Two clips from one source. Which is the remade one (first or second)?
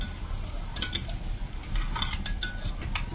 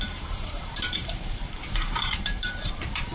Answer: second